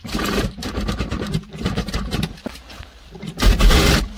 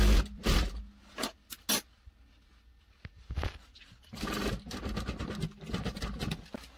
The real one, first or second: second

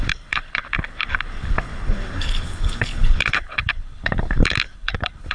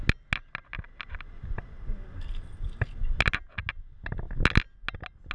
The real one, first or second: second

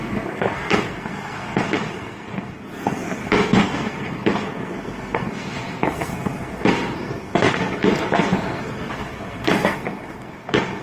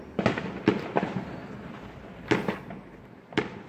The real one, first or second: second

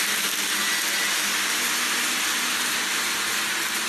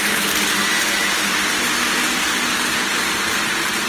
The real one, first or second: first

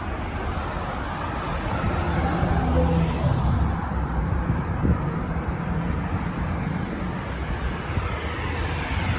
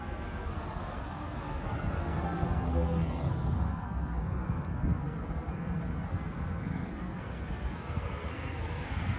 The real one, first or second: first